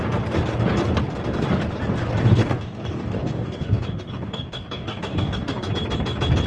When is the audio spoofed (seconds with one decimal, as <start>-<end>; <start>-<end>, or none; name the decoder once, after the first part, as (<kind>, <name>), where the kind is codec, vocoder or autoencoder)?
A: 2.4-5.7 (codec, DAC)